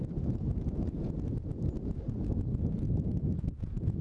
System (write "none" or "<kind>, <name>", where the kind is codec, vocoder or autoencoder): none